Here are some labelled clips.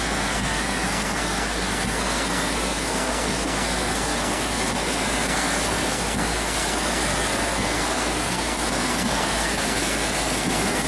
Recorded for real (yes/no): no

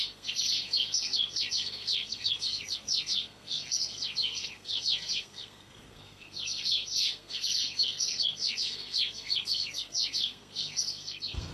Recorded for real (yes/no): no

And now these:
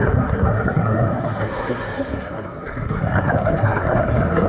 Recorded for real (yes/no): no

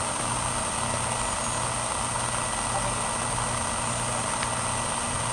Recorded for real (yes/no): yes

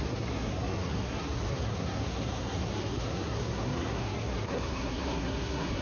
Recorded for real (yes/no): no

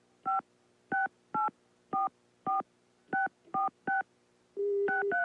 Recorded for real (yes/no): yes